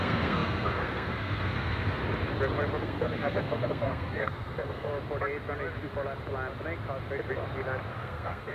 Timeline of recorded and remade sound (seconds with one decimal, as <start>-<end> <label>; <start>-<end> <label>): 0.0-2.0 remade; 2.0-2.8 recorded; 2.8-4.9 remade; 4.9-7.9 recorded; 7.9-8.5 remade